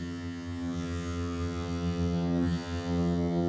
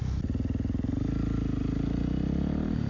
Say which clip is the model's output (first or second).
first